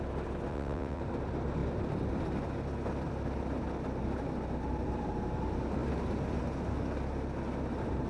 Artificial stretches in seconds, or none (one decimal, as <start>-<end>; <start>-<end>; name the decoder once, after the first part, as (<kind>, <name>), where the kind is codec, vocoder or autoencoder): 0.5-1.0 (vocoder, WaveNeXt)